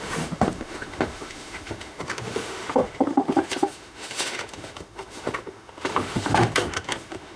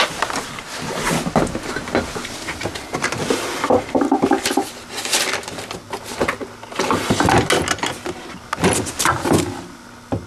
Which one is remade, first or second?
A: first